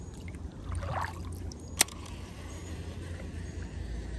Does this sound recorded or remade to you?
recorded